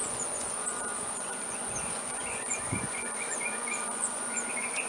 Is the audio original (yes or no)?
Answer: no